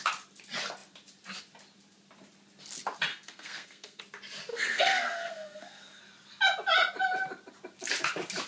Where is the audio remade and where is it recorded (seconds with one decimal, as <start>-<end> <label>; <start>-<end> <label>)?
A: 0.0-3.1 recorded; 3.1-4.0 remade; 4.0-4.5 recorded; 4.5-6.0 remade; 6.0-8.5 recorded